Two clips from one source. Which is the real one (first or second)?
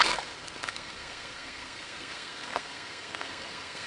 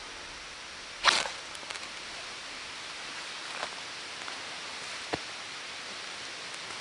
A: second